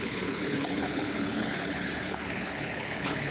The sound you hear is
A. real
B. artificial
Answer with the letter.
B